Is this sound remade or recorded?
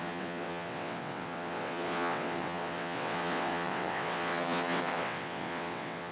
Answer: remade